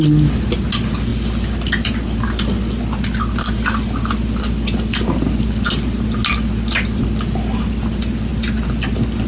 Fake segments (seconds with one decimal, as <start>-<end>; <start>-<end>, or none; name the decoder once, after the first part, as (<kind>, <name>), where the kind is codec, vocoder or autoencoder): none